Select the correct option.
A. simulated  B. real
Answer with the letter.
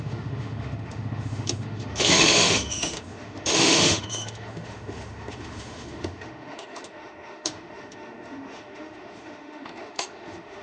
A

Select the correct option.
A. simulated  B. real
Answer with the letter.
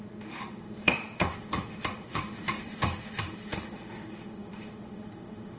A